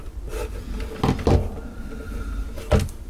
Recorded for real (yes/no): yes